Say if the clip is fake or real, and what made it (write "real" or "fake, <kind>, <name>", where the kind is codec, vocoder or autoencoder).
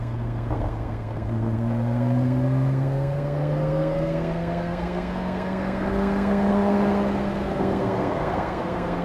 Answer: fake, codec, SNAC